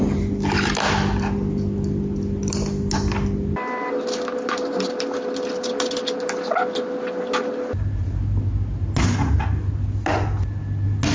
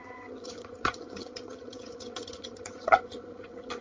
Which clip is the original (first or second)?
first